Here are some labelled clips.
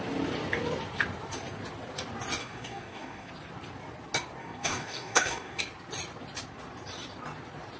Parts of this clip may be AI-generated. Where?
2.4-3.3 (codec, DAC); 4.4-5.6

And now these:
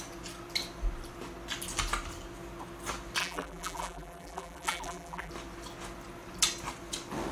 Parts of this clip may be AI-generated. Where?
3.2-5.3 (vocoder, BigVGAN v2)